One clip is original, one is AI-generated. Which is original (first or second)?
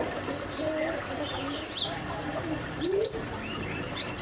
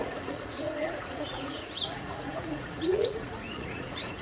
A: first